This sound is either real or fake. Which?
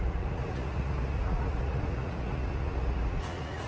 fake